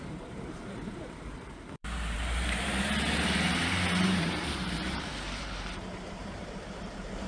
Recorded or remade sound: remade